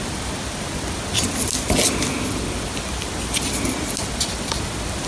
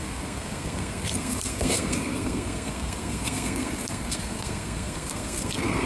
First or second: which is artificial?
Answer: second